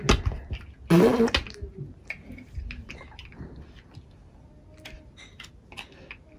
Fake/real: real